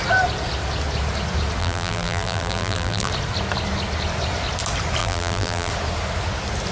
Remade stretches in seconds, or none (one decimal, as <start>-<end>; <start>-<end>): 1.6-3.1; 5.0-5.7

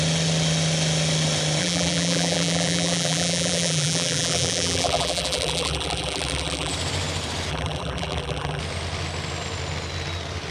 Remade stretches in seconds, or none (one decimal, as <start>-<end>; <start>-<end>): 1.6-6.7; 7.5-8.6

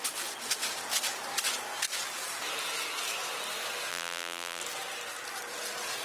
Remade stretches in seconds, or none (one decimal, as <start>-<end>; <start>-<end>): 3.9-4.6

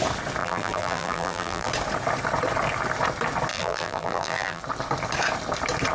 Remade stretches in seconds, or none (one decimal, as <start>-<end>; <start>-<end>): 0.4-1.7; 3.5-4.6